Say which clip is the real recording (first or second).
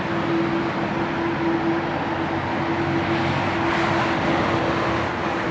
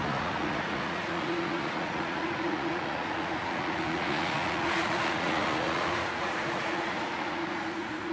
first